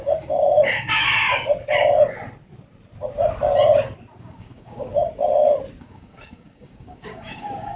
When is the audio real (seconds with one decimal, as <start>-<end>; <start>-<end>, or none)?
1.2-4.2; 5.0-5.8